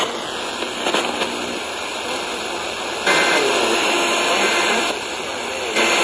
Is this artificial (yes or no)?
no